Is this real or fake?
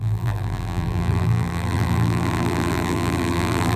fake